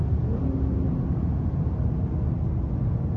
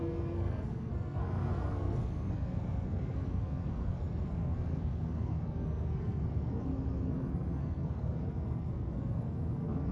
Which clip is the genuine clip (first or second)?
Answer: first